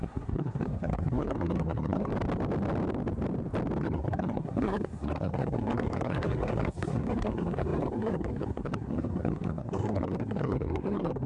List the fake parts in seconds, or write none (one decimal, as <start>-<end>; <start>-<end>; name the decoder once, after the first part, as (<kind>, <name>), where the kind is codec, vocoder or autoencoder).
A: 0.0-2.1 (codec, SNAC); 3.8-11.3